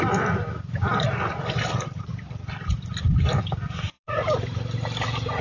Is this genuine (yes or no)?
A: no